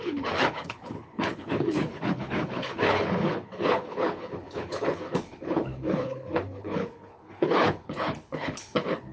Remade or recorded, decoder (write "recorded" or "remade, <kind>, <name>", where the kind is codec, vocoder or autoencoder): remade, codec, HILCodec